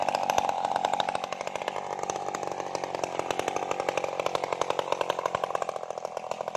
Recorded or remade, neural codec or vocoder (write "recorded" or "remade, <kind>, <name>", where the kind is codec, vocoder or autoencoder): recorded